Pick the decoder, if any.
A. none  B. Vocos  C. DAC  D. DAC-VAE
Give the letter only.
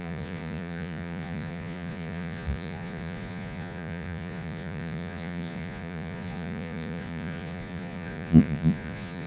B